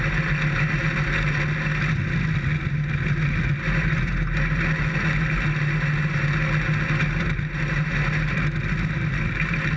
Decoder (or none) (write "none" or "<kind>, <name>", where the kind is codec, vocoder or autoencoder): none